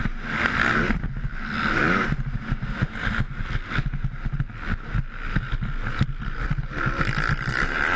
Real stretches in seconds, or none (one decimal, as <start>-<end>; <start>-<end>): 0.0-8.0